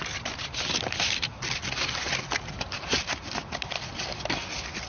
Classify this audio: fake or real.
real